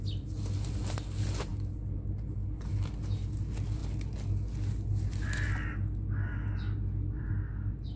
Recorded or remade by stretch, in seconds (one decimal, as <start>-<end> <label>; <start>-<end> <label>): 0.0-8.0 recorded